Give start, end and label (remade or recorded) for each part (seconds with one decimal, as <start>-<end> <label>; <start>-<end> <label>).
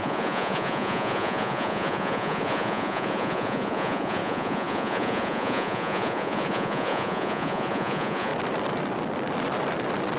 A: 0.0-8.3 remade; 8.3-10.2 recorded